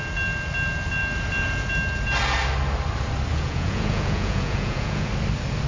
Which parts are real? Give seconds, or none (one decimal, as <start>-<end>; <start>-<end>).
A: 0.0-3.3; 5.1-5.7